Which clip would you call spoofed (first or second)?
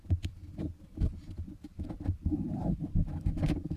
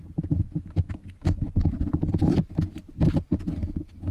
first